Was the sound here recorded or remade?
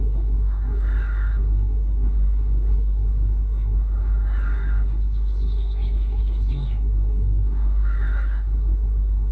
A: remade